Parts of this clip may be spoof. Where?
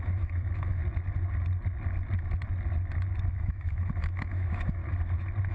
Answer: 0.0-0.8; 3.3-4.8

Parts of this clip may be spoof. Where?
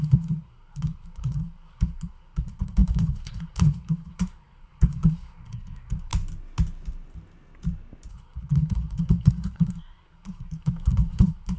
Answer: 0.0-6.1; 8.1-11.6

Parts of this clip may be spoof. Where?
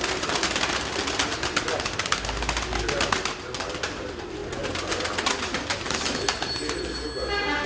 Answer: none